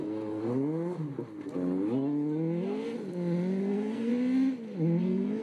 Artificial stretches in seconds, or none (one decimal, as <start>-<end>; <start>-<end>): 0.0-0.4; 3.6-4.1; 5.0-5.4